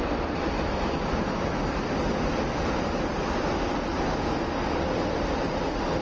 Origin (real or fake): real